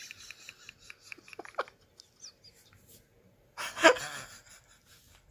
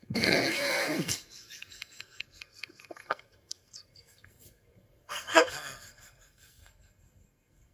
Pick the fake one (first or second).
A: second